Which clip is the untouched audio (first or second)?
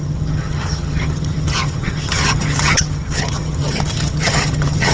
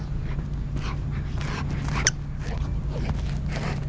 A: second